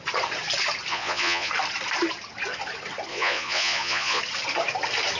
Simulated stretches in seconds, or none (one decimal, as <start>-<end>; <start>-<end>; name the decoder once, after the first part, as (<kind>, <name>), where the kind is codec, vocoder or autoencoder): 0.9-1.5 (vocoder, Vocos); 3.1-4.2